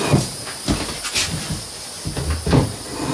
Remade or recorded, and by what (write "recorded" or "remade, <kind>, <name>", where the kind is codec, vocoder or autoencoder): recorded